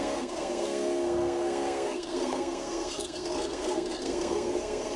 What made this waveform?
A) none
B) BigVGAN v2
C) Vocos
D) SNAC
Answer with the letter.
D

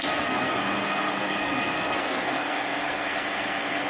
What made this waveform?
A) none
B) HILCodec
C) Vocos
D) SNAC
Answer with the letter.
D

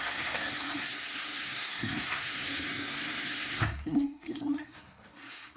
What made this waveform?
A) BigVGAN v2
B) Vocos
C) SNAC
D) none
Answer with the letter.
C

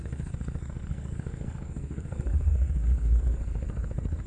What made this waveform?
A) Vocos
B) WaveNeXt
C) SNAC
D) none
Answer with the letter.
C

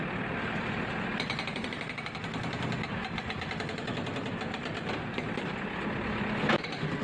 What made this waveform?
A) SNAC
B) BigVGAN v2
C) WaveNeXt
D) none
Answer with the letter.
D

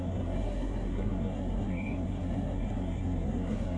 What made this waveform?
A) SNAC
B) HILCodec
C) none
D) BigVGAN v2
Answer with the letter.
A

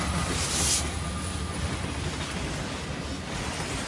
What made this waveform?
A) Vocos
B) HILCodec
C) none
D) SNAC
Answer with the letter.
C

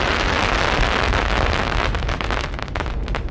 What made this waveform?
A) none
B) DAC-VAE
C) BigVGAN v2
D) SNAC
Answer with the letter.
A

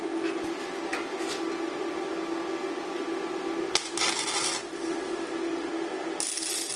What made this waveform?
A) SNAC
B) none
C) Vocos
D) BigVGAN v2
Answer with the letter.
B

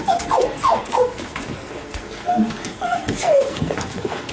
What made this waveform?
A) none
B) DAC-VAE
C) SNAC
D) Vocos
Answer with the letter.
C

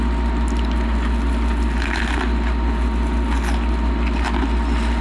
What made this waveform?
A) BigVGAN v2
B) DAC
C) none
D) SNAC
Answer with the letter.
C